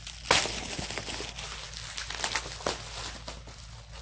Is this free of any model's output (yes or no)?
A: yes